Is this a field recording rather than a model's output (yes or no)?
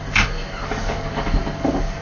no